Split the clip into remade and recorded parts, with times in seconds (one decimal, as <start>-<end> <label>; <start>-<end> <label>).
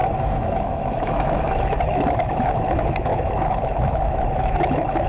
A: 0.0-5.1 remade